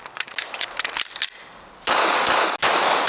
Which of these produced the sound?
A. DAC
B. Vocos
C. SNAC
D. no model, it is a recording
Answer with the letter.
D